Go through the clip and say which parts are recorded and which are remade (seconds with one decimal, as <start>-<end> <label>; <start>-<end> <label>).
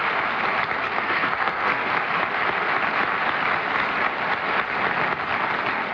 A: 0.0-0.8 recorded; 0.8-1.9 remade; 1.9-5.9 recorded